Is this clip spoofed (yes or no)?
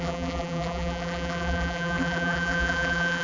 yes